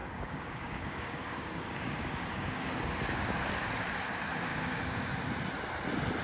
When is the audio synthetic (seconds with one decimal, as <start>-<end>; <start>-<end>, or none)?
0.0-3.7; 4.5-5.2